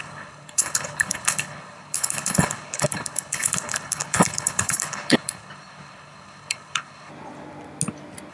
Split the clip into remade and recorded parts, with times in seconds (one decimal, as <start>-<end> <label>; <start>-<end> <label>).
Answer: 0.0-7.1 remade; 7.1-8.3 recorded